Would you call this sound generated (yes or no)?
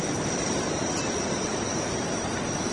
no